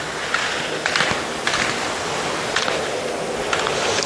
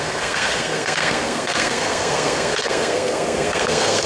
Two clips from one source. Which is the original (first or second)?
first